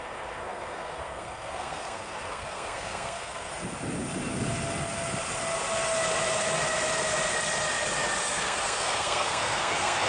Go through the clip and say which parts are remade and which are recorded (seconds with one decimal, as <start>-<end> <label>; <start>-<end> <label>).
0.0-3.5 remade; 3.5-8.3 recorded; 8.3-10.1 remade